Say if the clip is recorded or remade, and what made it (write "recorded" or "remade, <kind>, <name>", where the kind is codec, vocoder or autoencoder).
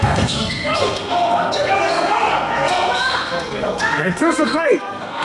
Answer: remade, codec, SNAC